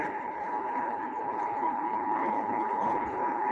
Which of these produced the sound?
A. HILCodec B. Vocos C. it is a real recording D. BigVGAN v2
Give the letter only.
A